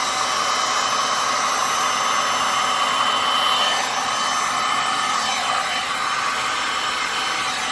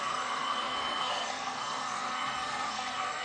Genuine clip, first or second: first